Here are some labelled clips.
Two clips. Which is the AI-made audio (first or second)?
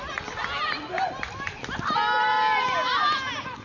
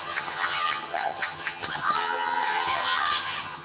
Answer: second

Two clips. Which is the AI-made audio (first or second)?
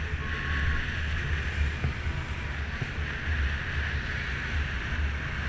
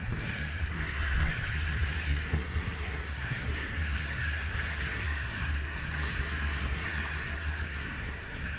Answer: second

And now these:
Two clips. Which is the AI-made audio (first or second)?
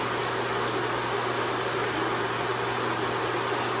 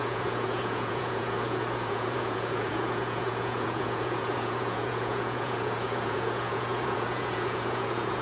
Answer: second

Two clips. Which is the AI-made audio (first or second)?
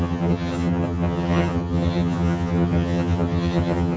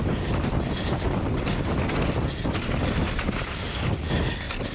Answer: first